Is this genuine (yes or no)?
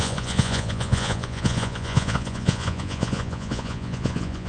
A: no